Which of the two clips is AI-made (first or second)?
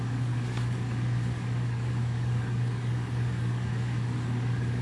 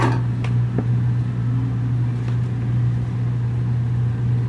first